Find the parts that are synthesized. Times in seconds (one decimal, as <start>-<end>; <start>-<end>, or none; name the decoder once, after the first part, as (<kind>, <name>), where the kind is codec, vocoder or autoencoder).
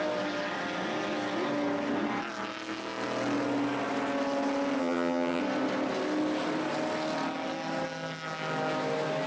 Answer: 4.8-5.4 (vocoder, HiFi-GAN)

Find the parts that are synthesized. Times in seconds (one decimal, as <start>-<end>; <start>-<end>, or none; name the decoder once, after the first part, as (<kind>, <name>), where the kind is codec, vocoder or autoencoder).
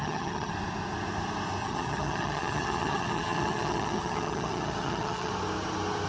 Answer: 0.0-0.5 (vocoder, HiFi-GAN); 1.6-5.3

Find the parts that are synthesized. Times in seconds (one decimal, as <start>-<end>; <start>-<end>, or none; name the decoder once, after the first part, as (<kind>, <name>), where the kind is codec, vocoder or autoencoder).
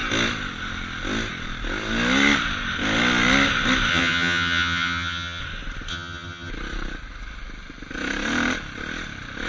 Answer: 3.9-5.4 (vocoder, HiFi-GAN); 5.9-6.5